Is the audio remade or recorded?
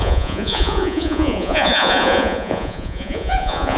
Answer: remade